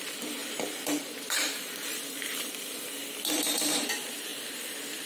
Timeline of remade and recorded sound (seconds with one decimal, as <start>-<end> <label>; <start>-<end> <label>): 0.0-5.1 remade

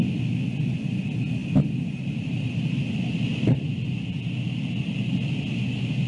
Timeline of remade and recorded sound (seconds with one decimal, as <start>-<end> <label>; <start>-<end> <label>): 0.0-6.1 recorded

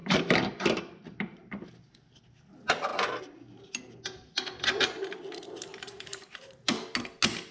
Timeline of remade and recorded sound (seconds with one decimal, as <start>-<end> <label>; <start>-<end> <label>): 0.0-1.7 remade; 1.7-2.9 recorded; 2.9-3.4 remade; 3.4-5.7 recorded; 5.7-6.2 remade; 6.2-7.5 recorded

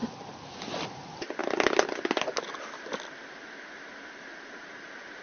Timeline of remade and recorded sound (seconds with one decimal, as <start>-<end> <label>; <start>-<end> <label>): 0.0-5.2 recorded